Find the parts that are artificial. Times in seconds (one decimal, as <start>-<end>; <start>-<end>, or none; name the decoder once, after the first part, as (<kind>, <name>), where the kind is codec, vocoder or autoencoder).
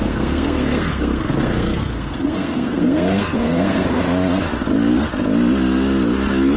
0.0-4.0 (codec, SNAC)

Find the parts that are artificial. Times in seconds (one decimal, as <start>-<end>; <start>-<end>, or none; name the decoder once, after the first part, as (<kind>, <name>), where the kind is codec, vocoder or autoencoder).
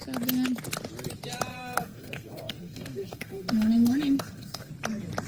1.5-4.7 (codec, SNAC)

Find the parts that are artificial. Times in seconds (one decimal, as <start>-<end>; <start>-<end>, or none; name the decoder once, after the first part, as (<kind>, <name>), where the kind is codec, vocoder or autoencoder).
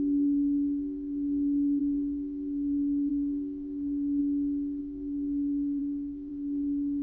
0.0-4.2 (codec, SNAC); 4.8-7.0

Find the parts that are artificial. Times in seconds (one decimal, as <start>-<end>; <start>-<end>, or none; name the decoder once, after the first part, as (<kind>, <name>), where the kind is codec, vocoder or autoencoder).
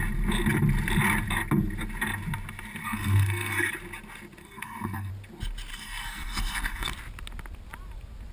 2.8-3.7 (codec, SNAC); 4.4-5.1; 5.7-6.9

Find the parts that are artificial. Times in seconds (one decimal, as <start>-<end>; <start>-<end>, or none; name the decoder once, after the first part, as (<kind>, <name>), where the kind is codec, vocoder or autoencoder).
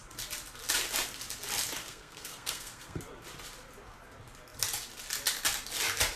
1.8-3.0 (codec, SNAC)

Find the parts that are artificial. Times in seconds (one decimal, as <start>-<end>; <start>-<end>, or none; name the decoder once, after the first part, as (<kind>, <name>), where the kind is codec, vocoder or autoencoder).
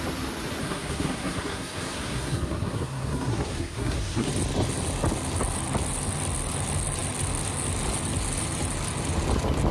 0.6-4.3 (codec, SNAC)